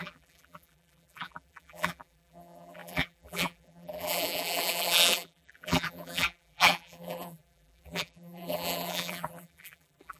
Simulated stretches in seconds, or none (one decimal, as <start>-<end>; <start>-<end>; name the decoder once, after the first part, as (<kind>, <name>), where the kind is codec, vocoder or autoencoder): 0.0-10.2 (vocoder, BigVGAN v2)